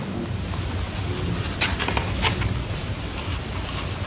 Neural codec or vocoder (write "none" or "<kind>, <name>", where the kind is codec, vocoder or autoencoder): none